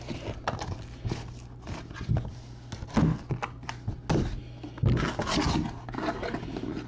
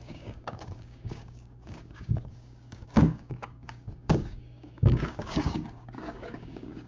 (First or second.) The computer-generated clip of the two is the second